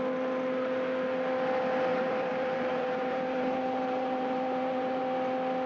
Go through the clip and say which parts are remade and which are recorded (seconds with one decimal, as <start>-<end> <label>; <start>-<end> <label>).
0.0-1.9 recorded; 1.9-5.0 remade; 5.0-5.7 recorded